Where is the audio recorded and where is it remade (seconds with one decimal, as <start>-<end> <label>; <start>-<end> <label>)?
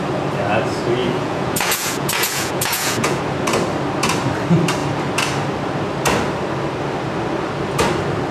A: 0.0-1.0 recorded; 1.0-3.2 remade; 3.2-8.3 recorded